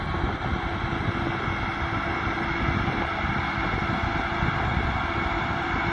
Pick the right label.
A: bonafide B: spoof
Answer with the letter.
A